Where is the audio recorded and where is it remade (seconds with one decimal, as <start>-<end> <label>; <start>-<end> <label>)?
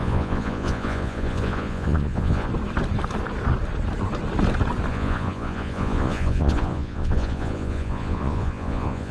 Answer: 0.0-2.5 remade; 2.5-4.9 recorded; 4.9-9.1 remade